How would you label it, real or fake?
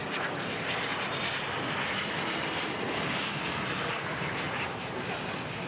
real